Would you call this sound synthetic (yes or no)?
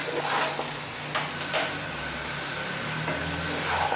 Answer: no